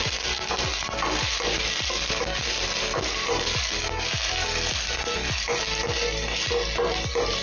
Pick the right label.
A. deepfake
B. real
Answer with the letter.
B